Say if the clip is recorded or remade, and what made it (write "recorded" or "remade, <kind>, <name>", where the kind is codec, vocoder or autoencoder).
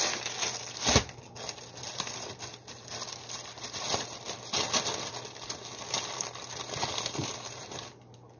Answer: recorded